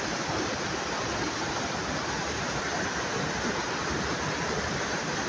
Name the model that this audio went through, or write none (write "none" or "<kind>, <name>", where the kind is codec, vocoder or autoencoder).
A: none